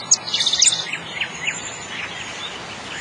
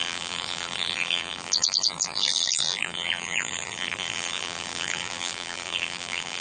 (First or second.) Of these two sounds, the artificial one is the second